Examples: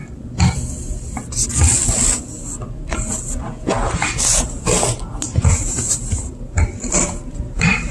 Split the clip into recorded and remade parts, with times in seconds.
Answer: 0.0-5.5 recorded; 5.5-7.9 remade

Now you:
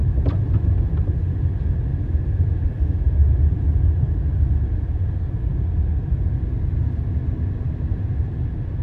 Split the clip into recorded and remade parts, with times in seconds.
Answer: 0.0-1.9 recorded; 1.9-3.1 remade; 3.1-8.8 recorded